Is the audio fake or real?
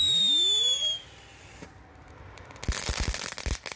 real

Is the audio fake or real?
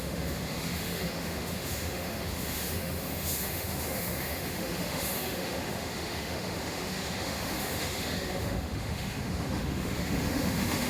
fake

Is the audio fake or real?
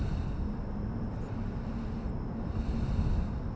real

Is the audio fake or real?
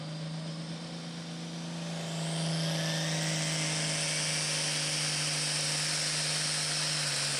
real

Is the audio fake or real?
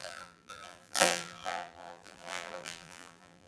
fake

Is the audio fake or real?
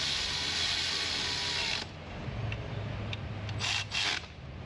real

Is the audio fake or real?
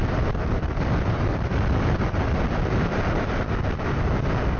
real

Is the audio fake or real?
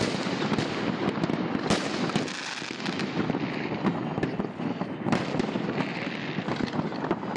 real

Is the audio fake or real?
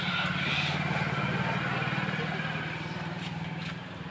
real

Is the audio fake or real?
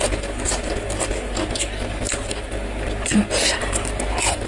real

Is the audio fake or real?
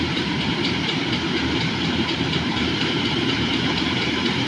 fake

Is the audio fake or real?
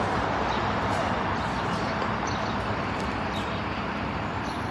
real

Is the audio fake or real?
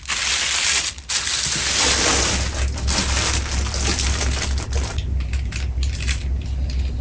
real